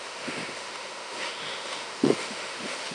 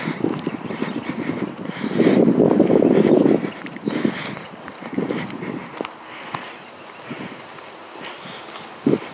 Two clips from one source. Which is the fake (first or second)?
first